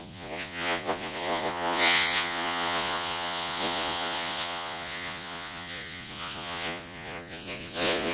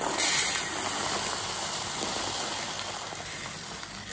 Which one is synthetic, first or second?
first